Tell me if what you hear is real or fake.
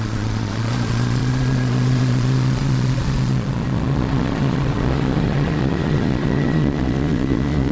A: fake